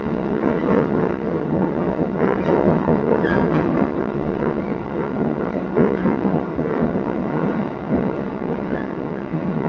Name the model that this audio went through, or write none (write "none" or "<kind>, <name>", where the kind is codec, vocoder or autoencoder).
vocoder, WaveNeXt